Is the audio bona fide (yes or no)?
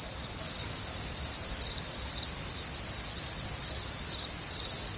yes